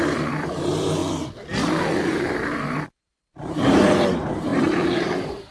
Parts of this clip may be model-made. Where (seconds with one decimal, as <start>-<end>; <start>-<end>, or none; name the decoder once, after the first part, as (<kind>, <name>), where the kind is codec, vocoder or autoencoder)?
0.0-1.0 (vocoder, BigVGAN v2); 2.0-5.5